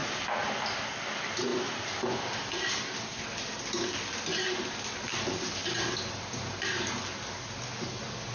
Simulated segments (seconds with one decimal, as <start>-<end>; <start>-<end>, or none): none

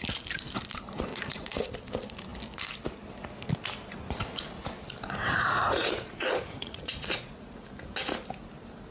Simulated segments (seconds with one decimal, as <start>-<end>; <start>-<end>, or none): 1.1-1.7; 5.2-7.5

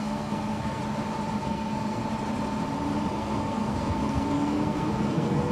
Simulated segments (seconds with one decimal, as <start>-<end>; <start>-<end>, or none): 0.0-0.8; 1.4-2.0; 3.1-5.5

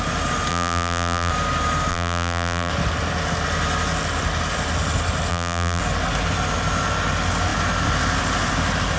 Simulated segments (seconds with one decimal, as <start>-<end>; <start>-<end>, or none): 0.5-1.3; 1.9-2.7; 5.3-5.8

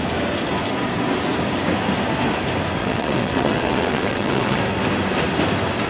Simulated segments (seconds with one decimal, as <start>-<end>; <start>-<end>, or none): 2.8-4.6

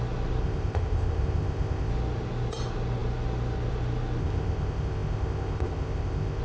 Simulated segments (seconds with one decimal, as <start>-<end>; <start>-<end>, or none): 0.4-1.9; 4.2-6.4